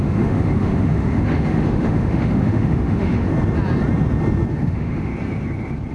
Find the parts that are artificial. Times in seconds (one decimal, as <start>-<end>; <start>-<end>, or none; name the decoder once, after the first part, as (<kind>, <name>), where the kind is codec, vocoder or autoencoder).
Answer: 0.0-3.3 (autoencoder, DAC-VAE); 4.5-5.1